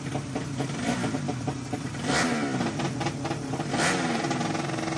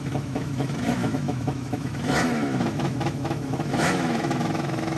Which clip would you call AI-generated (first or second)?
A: second